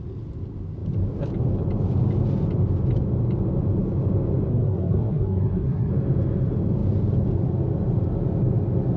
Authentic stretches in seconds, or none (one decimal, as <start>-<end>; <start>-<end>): 0.0-4.5; 5.9-9.0